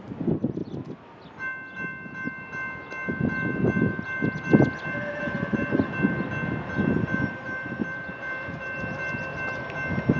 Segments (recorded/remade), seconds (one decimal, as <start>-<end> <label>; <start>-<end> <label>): 0.0-10.2 recorded